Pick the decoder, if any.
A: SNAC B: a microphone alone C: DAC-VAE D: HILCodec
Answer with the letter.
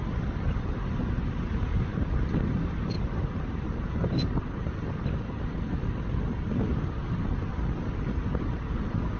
B